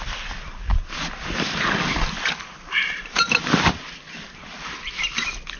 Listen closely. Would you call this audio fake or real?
real